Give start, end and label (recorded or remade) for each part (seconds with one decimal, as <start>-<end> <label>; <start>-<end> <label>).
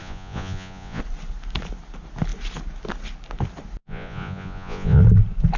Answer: 0.0-1.0 remade; 1.0-3.8 recorded; 3.8-5.0 remade; 5.0-5.6 recorded